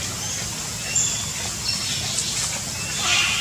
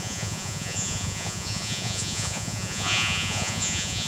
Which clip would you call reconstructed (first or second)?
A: second